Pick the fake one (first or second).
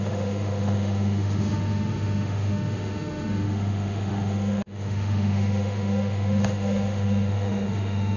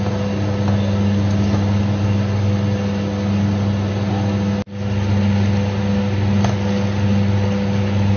first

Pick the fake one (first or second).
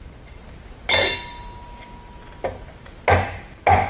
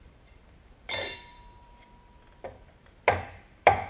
second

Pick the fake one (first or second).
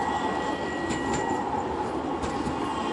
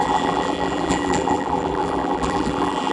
second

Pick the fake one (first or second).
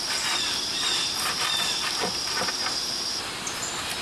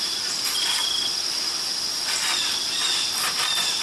second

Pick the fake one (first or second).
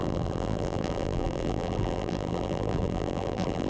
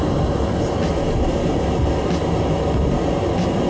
first